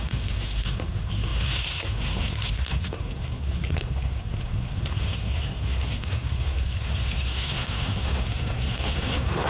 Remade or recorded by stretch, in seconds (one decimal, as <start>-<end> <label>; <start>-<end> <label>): 0.0-9.5 remade